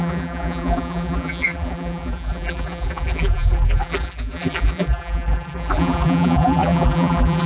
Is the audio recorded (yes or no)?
no